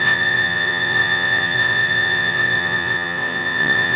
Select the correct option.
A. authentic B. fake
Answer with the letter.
B